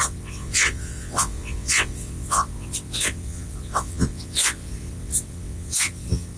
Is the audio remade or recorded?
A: remade